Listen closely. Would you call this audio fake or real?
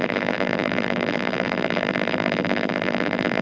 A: fake